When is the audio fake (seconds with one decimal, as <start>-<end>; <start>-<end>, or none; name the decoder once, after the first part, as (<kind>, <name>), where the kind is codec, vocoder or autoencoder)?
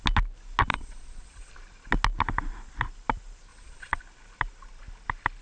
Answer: 0.7-1.5 (vocoder, Vocos); 3.5-4.0